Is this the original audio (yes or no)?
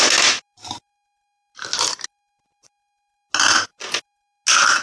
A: yes